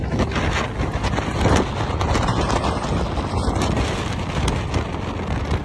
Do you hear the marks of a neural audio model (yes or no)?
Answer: no